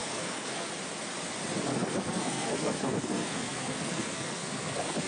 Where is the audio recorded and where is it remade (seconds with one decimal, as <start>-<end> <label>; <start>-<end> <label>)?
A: 0.0-0.7 remade; 0.7-1.7 recorded; 1.7-5.1 remade

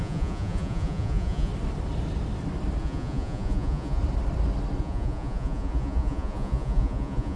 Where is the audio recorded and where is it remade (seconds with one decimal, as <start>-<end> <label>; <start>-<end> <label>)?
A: 0.0-1.5 remade; 1.5-2.8 recorded; 2.8-4.0 remade; 4.0-4.8 recorded; 4.8-7.4 remade

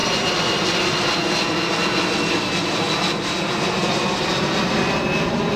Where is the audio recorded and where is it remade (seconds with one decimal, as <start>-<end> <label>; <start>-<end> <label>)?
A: 0.0-5.6 recorded